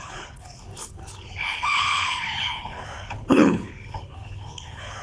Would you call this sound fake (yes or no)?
yes